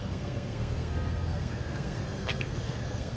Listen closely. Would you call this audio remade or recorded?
remade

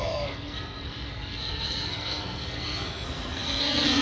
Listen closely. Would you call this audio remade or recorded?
remade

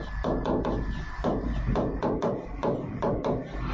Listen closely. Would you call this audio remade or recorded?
recorded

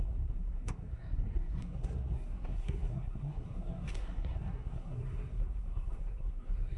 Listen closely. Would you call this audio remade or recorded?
remade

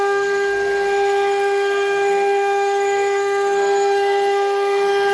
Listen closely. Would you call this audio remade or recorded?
remade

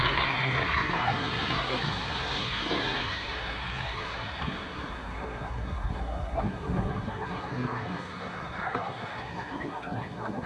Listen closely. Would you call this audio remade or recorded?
remade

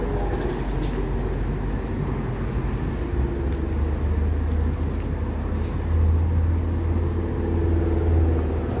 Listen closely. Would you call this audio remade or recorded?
recorded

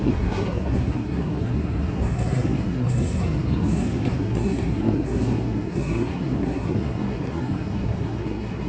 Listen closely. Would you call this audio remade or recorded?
remade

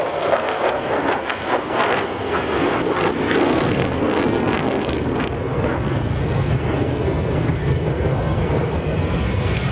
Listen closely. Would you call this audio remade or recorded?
remade